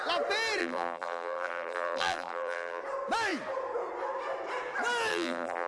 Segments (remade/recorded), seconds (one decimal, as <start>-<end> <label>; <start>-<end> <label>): 0.0-0.6 recorded; 0.6-2.8 remade; 2.8-5.1 recorded; 5.1-5.7 remade